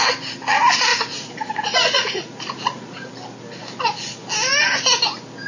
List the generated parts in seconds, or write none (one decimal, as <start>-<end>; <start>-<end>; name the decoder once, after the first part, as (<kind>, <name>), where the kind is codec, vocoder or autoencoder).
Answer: 0.9-3.1 (vocoder, Vocos)